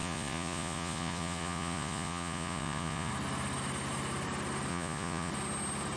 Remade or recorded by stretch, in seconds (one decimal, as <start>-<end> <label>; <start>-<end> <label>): 0.0-3.1 remade; 3.1-4.7 recorded; 4.7-5.3 remade; 5.3-6.0 recorded